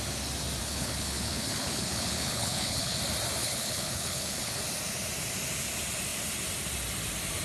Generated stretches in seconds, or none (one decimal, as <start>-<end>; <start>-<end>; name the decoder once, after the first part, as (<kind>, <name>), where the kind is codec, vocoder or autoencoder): 0.6-3.0 (codec, HILCodec); 3.4-4.6